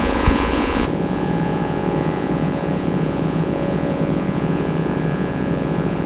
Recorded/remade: remade